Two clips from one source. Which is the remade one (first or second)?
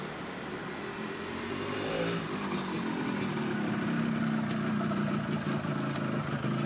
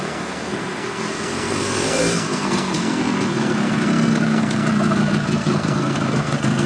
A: second